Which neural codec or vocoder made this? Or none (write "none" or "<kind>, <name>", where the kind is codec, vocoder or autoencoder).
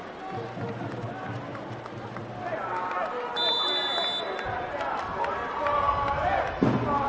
none